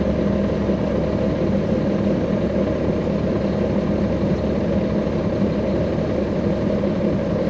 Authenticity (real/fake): real